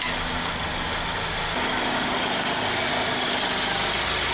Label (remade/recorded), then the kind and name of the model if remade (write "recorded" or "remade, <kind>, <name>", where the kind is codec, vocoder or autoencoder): recorded